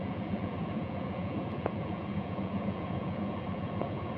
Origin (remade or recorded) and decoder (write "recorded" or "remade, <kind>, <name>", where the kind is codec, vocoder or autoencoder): remade, vocoder, Vocos